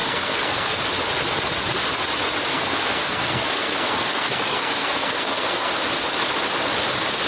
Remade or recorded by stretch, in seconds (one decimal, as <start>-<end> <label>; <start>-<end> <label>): 0.0-0.8 remade; 0.8-2.5 recorded; 2.5-5.7 remade; 5.7-7.3 recorded